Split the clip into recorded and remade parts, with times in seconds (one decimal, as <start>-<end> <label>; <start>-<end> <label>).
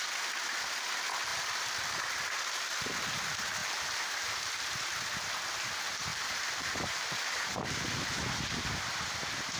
0.0-3.6 recorded; 3.6-4.8 remade; 4.8-6.1 recorded; 6.1-8.3 remade; 8.3-9.6 recorded